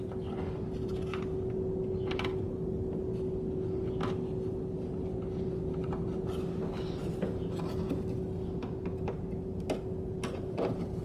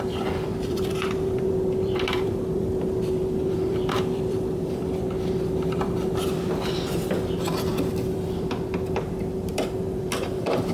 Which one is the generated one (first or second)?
second